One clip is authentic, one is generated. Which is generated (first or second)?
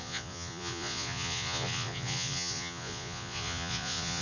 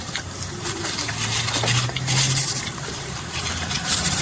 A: first